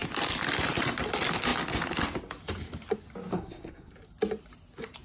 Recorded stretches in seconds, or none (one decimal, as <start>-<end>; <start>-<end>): 0.0-3.3; 3.9-5.0